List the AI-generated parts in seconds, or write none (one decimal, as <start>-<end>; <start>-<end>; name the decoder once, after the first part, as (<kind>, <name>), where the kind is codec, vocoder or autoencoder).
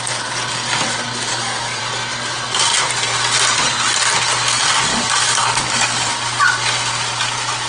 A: 1.3-1.8 (codec, DAC); 4.9-6.1